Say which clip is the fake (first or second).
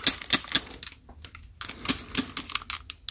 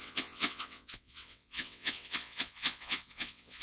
second